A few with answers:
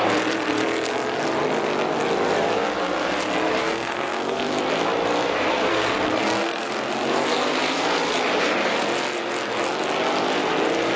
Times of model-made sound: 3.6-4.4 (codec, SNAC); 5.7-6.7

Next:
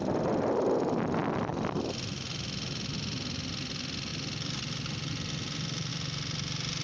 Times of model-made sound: none

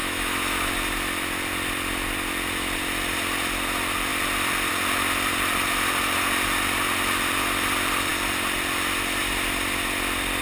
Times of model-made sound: 0.0-0.7 (autoencoder, DAC-VAE)

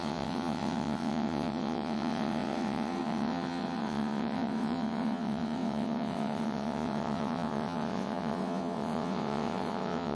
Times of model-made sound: 0.0-10.1 (vocoder, WaveNeXt)

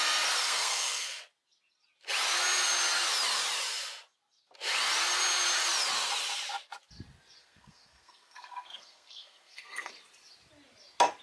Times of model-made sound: 0.4-1.2 (codec, SNAC); 7.4-9.9

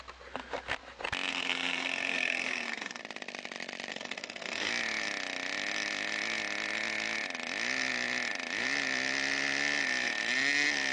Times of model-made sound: 1.3-3.0 (codec, SNAC); 3.9-4.7

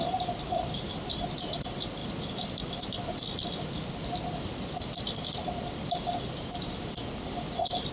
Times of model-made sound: none

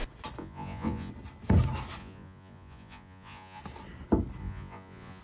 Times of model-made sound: 0.4-1.1 (vocoder, Vocos); 2.0-3.6; 4.4-5.2